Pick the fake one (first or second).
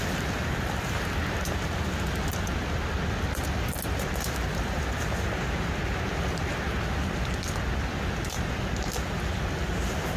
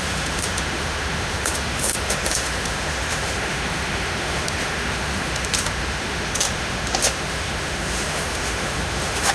second